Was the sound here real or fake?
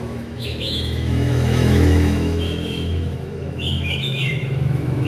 fake